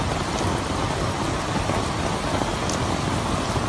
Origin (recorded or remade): recorded